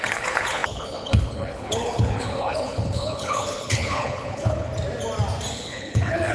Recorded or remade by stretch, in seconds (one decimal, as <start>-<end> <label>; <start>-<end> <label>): 0.0-4.7 remade; 4.7-5.5 recorded; 5.5-6.3 remade

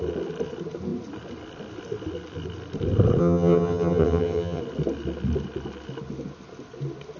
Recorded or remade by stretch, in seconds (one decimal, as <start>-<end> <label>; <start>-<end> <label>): 0.0-3.2 recorded; 3.2-4.6 remade; 4.6-7.2 recorded

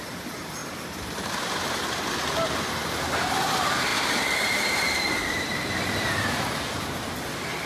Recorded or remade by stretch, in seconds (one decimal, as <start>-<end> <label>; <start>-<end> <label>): 0.0-0.6 recorded; 0.6-2.1 remade; 2.1-3.9 recorded; 3.9-6.4 remade; 6.4-7.7 recorded

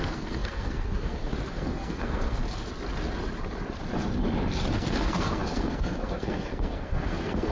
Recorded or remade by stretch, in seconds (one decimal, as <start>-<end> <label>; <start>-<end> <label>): 0.0-2.4 remade; 2.4-4.7 recorded; 4.7-7.5 remade

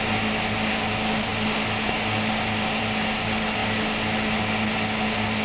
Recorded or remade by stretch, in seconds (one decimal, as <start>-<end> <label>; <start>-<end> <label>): 0.0-5.4 recorded

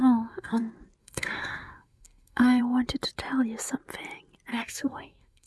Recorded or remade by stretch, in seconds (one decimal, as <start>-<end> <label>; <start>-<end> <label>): 0.0-0.6 remade; 0.6-1.0 recorded; 1.0-2.6 remade; 2.6-4.5 recorded; 4.5-5.5 remade